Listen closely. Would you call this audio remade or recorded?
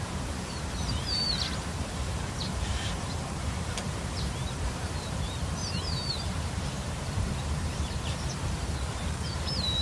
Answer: remade